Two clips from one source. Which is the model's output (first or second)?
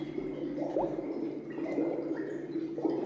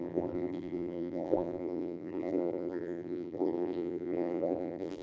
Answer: second